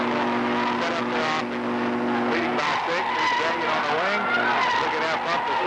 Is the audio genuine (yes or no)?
yes